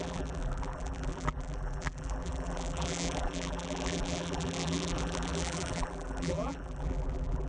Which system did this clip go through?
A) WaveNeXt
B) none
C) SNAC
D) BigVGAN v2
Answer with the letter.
D